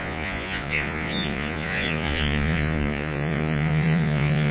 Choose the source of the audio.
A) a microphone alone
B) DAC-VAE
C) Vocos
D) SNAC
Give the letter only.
C